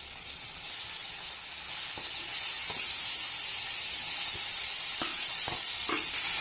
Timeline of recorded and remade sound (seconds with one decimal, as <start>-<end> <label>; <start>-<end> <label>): 0.0-5.1 recorded; 5.1-5.9 remade; 5.9-6.4 recorded